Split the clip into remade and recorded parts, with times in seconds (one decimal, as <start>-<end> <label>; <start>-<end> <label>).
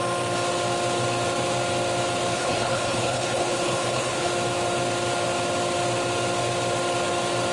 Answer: 0.0-2.3 recorded; 2.3-4.3 remade; 4.3-7.5 recorded